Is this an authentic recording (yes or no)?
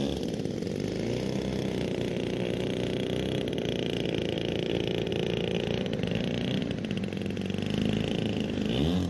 yes